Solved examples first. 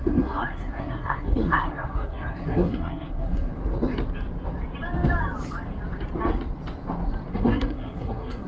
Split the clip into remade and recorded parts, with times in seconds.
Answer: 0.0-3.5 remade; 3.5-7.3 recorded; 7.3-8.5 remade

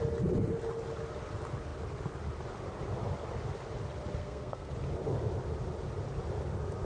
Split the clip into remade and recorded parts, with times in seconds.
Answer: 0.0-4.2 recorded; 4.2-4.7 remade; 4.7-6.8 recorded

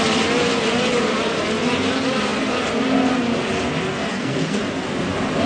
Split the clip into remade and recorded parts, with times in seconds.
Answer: 0.0-4.1 recorded; 4.1-4.6 remade; 4.6-5.5 recorded

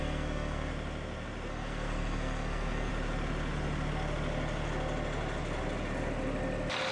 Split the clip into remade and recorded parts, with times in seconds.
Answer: 0.0-0.7 remade; 0.7-1.5 recorded; 1.5-2.9 remade; 2.9-6.9 recorded

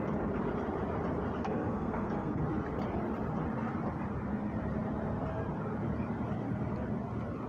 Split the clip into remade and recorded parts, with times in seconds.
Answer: 0.0-1.4 recorded; 1.4-2.4 remade; 2.4-7.5 recorded